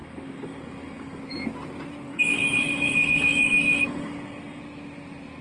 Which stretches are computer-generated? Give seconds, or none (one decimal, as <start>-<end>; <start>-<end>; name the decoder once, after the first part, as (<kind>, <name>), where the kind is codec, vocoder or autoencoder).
0.0-1.2 (codec, DAC); 2.1-4.6